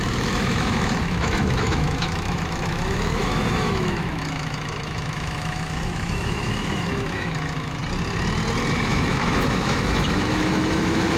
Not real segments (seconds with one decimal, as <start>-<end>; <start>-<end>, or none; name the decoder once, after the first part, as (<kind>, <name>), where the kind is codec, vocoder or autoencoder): 0.0-7.8 (autoencoder, DAC-VAE); 8.7-11.2